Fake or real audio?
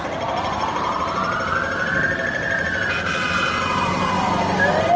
real